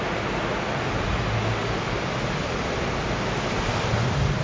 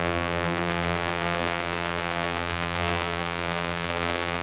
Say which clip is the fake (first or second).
second